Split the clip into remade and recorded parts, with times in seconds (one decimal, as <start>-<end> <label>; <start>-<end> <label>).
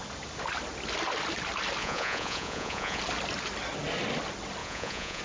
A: 0.0-1.8 recorded; 1.8-3.0 remade; 3.0-4.6 recorded; 4.6-5.2 remade